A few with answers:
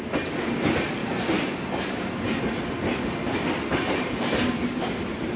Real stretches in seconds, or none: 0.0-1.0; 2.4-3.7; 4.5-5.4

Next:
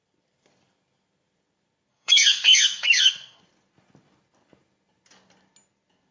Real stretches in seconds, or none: 0.0-1.9; 3.4-6.1

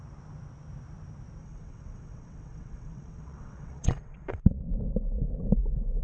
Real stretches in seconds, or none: 0.0-1.4; 4.6-6.0